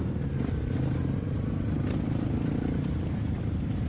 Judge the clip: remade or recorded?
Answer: recorded